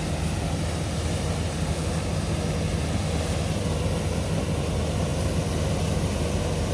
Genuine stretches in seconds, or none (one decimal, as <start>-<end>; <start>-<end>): 0.0-6.7